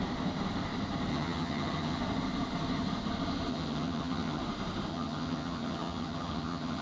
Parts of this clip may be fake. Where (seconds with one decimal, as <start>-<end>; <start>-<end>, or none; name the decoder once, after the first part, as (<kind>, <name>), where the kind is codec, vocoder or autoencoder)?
1.1-2.0 (vocoder, HiFi-GAN); 3.5-4.4; 4.9-6.8